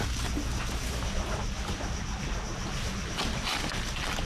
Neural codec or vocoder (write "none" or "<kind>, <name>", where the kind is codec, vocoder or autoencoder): none